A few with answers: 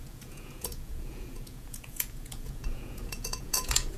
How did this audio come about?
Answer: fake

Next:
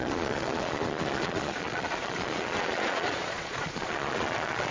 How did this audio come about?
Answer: fake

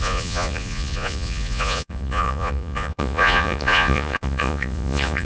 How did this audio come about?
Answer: fake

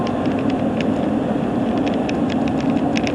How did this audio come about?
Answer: real